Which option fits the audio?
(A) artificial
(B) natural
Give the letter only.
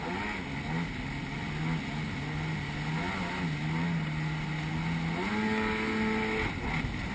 B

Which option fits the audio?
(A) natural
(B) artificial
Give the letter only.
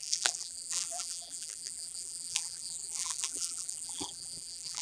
B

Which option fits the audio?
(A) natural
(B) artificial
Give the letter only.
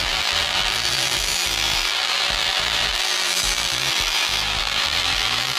B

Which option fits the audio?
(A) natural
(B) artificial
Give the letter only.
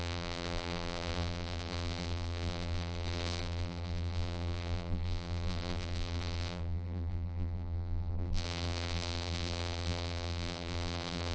B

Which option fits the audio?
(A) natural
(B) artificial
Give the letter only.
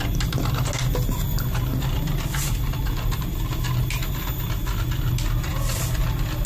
A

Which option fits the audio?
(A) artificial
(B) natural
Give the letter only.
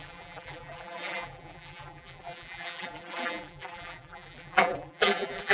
A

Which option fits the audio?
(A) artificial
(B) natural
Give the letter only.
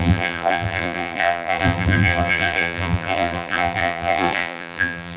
A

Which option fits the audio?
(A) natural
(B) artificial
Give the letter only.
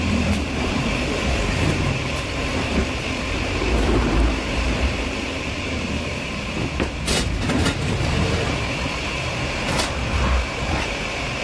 B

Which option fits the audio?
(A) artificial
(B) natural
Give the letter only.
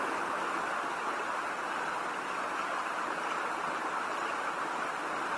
B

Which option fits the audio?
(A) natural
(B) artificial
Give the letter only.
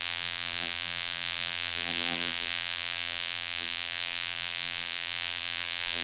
B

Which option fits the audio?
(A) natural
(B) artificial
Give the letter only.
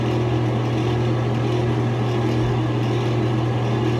A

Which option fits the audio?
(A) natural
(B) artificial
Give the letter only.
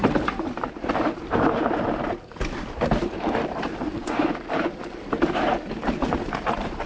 B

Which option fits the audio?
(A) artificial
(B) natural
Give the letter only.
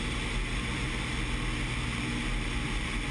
B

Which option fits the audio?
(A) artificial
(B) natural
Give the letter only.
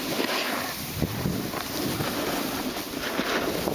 B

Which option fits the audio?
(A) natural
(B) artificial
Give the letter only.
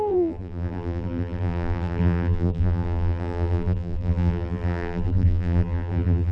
B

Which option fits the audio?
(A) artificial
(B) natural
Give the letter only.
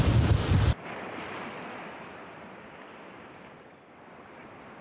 A